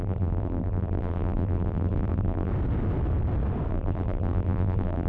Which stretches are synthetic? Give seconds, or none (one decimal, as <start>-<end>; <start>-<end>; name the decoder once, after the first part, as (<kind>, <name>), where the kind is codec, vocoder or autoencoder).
0.0-2.5 (vocoder, BigVGAN v2); 3.7-5.1

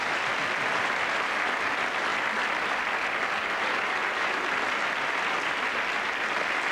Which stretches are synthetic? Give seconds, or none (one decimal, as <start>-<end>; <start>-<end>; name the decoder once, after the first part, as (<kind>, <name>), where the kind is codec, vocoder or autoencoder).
none

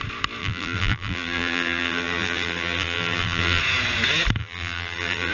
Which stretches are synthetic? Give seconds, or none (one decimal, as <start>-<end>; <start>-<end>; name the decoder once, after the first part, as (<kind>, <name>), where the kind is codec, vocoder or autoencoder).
0.4-3.6 (vocoder, BigVGAN v2); 4.4-5.3

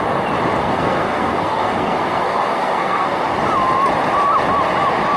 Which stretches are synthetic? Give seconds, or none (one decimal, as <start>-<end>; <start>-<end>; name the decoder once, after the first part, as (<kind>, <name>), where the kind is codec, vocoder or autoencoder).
0.6-3.2 (codec, SNAC)

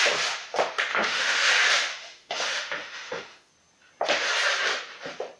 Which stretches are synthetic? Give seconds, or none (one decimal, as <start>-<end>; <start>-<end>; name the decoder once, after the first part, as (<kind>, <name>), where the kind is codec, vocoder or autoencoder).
0.9-1.5 (autoencoder, DAC-VAE); 1.9-3.5